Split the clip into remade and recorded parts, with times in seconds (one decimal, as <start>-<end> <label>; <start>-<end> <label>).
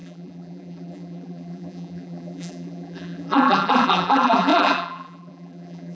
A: 0.0-5.9 remade